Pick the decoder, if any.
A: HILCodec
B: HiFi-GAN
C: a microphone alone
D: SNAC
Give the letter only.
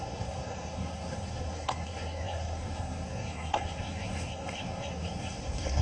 D